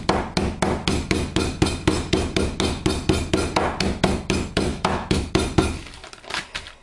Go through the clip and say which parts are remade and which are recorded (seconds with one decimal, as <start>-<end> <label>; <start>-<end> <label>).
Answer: 0.0-4.7 recorded; 4.7-5.3 remade; 5.3-6.8 recorded